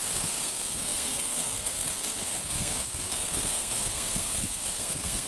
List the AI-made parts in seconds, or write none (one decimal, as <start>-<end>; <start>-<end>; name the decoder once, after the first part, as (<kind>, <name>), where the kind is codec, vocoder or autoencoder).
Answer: 0.0-5.3 (codec, SNAC)